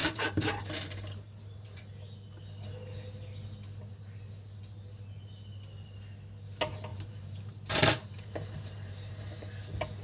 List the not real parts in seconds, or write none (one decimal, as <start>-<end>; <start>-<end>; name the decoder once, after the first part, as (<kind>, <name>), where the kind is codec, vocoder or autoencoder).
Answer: 0.0-1.8 (vocoder, BigVGAN v2); 6.9-9.1